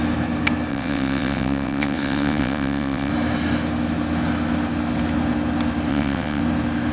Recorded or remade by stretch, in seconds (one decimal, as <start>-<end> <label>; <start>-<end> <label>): 0.0-0.7 recorded; 0.7-3.1 remade; 3.1-5.9 recorded; 5.9-6.4 remade; 6.4-6.9 recorded